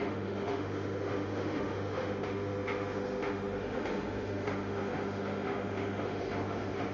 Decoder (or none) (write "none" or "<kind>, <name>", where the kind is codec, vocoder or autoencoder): autoencoder, DAC-VAE